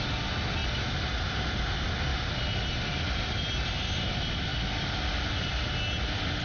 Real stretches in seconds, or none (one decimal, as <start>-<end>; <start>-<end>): 0.0-6.4